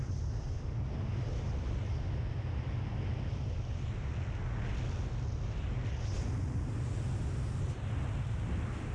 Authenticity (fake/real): real